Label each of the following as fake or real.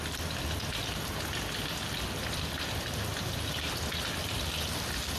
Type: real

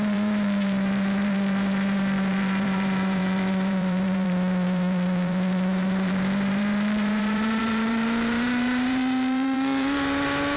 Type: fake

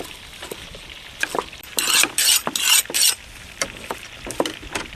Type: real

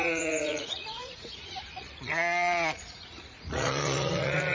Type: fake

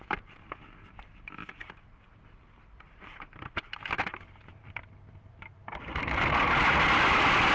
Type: fake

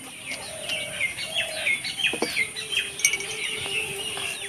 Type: real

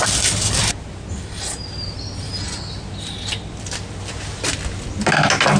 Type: real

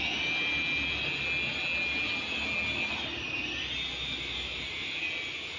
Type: real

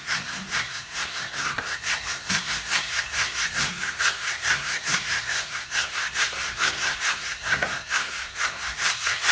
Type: fake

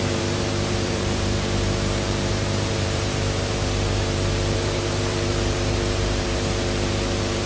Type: fake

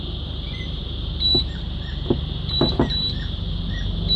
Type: fake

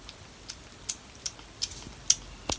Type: real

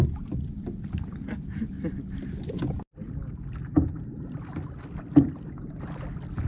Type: real